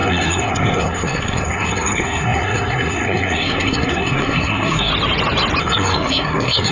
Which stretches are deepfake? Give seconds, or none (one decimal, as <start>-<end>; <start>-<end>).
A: 0.0-4.9; 5.6-6.7